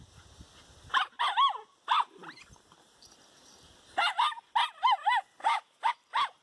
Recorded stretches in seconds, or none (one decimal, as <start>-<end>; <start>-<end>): 0.0-5.4; 5.9-6.4